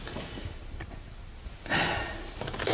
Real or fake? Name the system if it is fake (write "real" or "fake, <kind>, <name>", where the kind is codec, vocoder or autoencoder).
real